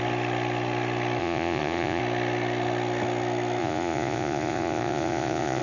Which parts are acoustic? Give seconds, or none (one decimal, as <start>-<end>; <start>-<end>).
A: 0.0-1.2; 2.0-3.6